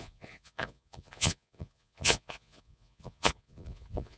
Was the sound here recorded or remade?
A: remade